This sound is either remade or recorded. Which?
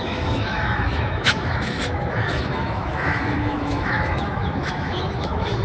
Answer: remade